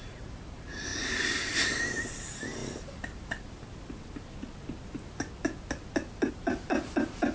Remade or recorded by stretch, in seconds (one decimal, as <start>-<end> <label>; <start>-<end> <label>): 0.0-2.6 remade; 2.6-6.3 recorded; 6.3-7.3 remade